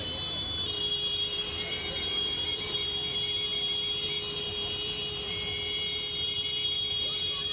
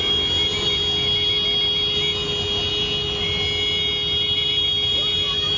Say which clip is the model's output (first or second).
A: first